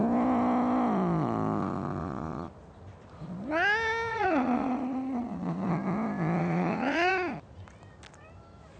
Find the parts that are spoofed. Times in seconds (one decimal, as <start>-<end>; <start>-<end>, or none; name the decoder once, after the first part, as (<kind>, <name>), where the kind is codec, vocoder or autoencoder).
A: 2.0-2.5 (vocoder, Vocos); 4.1-5.7; 6.4-7.1